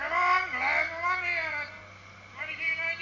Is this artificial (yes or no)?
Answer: no